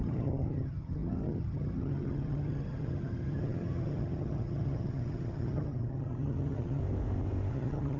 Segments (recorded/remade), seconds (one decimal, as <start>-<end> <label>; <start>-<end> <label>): 0.0-6.8 remade; 6.8-7.5 recorded; 7.5-8.0 remade